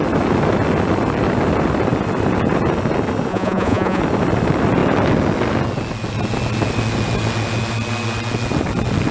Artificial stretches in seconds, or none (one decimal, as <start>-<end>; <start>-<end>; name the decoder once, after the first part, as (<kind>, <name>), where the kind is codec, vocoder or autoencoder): 3.3-4.0 (vocoder, Vocos)